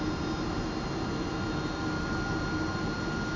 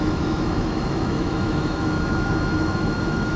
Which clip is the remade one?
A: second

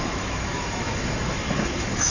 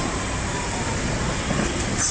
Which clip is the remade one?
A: first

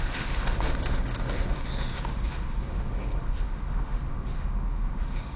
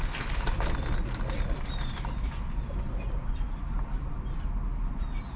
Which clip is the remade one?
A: first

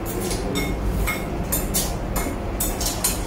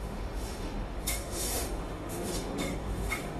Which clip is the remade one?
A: second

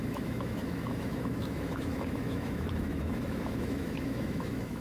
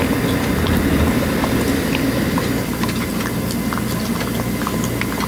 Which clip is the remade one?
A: first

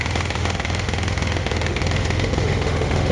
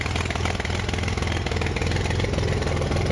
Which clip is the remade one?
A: first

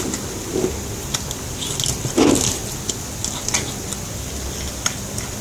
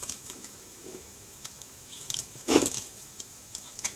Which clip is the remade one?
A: second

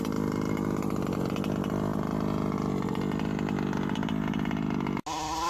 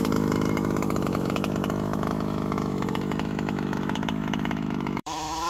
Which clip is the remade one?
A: second